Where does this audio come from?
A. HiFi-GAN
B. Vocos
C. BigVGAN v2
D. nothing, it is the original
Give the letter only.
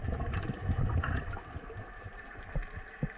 D